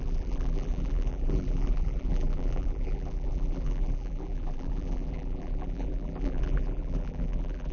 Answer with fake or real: fake